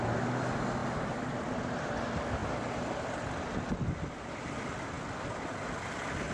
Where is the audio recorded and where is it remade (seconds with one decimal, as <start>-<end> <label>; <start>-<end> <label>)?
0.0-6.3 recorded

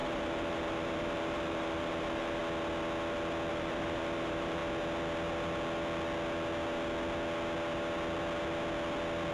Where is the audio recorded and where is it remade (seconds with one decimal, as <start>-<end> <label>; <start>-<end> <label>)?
0.0-2.4 remade; 2.4-3.5 recorded; 3.5-4.6 remade; 4.6-9.3 recorded

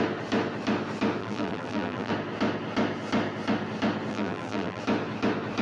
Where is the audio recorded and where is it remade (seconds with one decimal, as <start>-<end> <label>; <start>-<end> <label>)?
0.0-1.2 recorded; 1.2-2.1 remade; 2.1-4.1 recorded; 4.1-4.8 remade; 4.8-5.6 recorded